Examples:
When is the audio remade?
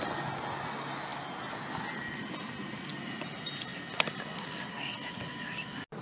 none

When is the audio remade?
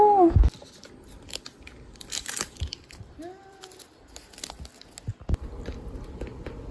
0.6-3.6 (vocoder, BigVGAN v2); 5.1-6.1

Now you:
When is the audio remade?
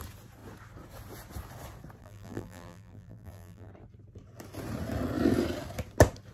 2.0-3.7 (vocoder, BigVGAN v2)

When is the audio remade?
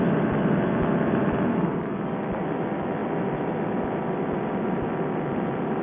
none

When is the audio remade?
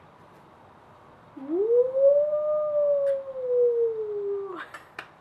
1.6-2.1 (vocoder, BigVGAN v2)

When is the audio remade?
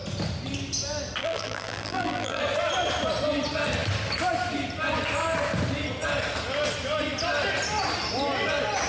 1.2-2.4 (vocoder, BigVGAN v2)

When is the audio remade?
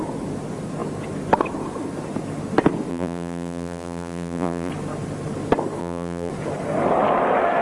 2.9-4.7 (vocoder, BigVGAN v2); 5.8-6.3